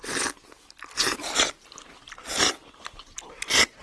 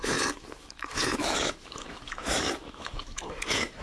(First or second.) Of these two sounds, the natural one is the first